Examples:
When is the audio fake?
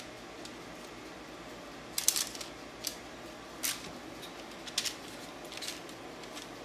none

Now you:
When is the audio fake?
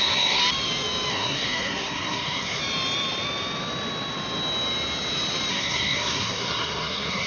0.0-0.4 (codec, SNAC); 1.1-2.6; 5.5-7.3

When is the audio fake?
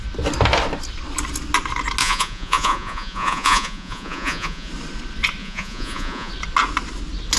2.0-4.7 (vocoder, Vocos); 5.4-6.3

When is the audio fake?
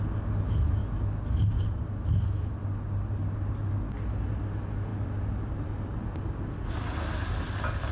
none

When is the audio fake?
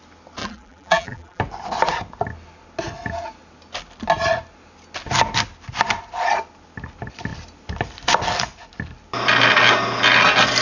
0.4-1.4 (vocoder, BigVGAN v2)